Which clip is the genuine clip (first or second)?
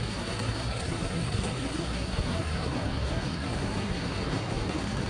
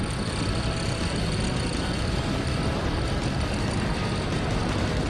second